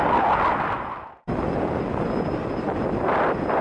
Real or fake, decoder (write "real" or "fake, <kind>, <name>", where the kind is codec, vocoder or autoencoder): real